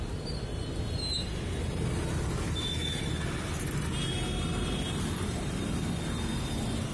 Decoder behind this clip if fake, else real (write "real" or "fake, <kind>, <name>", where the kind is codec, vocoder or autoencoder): real